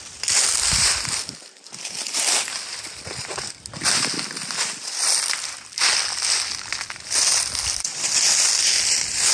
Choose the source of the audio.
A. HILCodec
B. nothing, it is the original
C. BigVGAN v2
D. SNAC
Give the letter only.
B